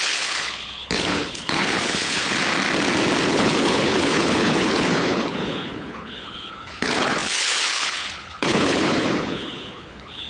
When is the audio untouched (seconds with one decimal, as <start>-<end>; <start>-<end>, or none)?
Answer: 2.4-3.3